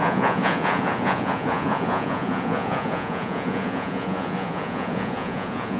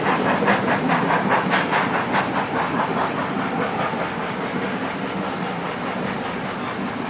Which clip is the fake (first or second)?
first